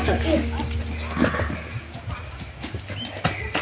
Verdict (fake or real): real